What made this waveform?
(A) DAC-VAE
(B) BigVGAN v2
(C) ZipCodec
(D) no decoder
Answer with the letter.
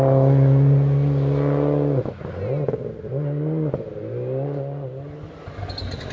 D